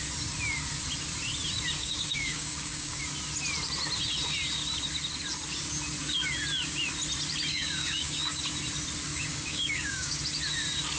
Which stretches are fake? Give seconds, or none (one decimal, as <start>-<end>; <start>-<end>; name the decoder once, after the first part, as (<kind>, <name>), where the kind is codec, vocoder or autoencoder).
1.8-3.0 (codec, DAC); 7.5-8.4; 9.1-10.2